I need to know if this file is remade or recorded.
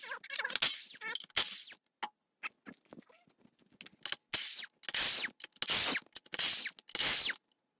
recorded